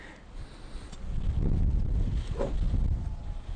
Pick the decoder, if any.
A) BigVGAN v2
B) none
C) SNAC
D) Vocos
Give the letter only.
B